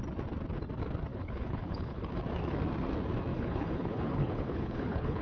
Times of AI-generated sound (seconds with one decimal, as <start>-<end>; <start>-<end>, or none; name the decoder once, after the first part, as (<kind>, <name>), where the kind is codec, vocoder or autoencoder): 1.1-2.1 (codec, HILCodec); 3.3-5.2